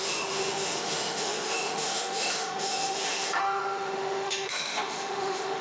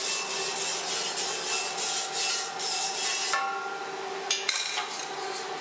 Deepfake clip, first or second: first